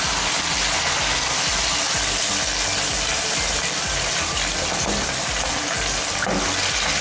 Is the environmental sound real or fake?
real